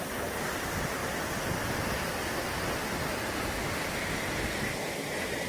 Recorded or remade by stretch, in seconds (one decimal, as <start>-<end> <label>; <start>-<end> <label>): 0.0-5.5 recorded

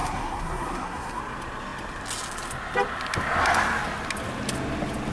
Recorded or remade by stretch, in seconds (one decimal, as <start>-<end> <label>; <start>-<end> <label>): 0.0-1.2 remade; 1.2-5.1 recorded

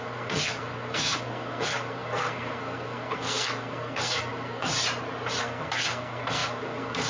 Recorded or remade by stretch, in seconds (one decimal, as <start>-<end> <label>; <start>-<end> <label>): 0.0-4.7 remade; 4.7-5.4 recorded; 5.4-7.1 remade

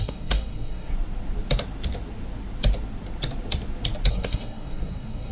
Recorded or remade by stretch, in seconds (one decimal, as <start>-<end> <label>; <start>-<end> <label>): 0.0-0.9 remade; 0.9-4.1 recorded; 4.1-5.3 remade